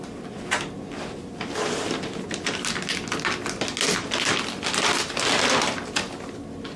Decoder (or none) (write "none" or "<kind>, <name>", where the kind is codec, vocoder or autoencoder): none